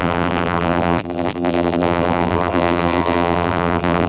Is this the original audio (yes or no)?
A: no